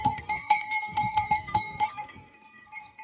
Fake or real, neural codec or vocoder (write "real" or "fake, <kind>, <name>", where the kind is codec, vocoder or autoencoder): fake, codec, SNAC